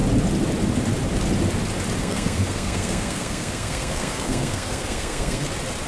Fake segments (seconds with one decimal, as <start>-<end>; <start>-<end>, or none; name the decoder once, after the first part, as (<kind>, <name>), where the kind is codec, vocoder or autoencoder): 2.0-5.5 (codec, SNAC)